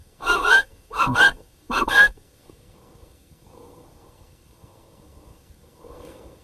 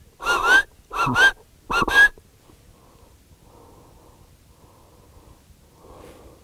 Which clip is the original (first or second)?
second